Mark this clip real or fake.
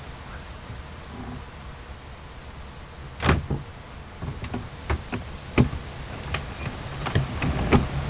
real